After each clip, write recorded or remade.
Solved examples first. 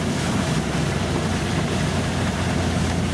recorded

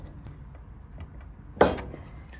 recorded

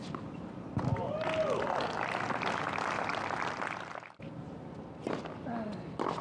recorded